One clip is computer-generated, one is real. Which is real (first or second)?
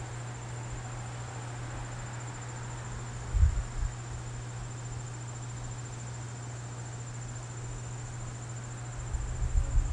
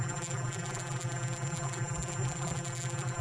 first